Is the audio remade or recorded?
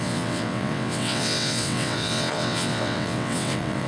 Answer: remade